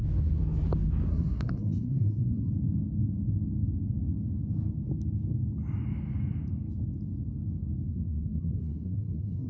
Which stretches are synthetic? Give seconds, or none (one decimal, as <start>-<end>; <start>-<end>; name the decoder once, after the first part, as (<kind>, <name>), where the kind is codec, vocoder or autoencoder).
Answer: 1.1-2.5 (codec, SNAC); 7.9-9.5